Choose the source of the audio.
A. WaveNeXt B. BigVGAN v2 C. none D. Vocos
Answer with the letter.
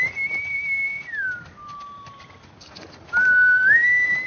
C